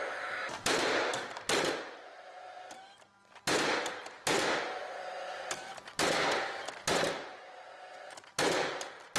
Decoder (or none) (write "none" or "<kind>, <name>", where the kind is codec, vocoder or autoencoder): none